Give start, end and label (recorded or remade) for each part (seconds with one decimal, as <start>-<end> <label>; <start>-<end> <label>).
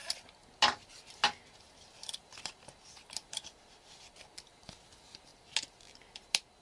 0.0-6.6 recorded